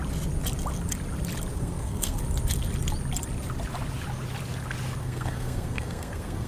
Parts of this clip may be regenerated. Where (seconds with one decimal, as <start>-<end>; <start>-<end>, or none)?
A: 1.5-2.2; 5.0-6.5